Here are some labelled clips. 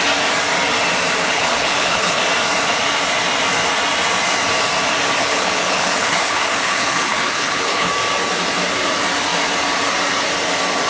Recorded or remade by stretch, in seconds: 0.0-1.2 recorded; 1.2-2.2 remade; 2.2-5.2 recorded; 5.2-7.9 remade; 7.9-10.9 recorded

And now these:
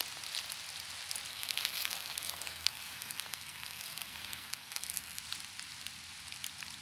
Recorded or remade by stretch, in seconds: 0.0-1.3 recorded; 1.3-5.2 remade; 5.2-6.8 recorded

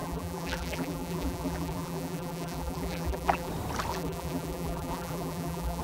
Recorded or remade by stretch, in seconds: 0.0-3.5 remade; 3.5-3.9 recorded; 3.9-5.8 remade

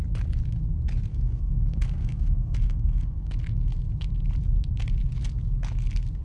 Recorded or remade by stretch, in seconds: 0.0-1.1 recorded; 1.1-3.3 remade; 3.3-6.2 recorded

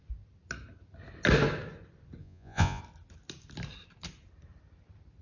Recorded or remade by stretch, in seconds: 0.0-2.2 recorded; 2.2-2.8 remade; 2.8-5.2 recorded

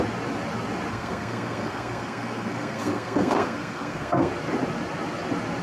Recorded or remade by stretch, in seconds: 0.0-0.9 recorded; 0.9-4.3 remade; 4.3-5.6 recorded